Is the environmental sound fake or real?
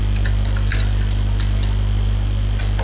real